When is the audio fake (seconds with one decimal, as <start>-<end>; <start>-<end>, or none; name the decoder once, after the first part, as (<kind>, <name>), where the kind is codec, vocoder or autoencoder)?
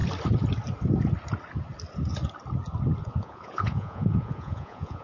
3.0-5.0 (vocoder, Vocos)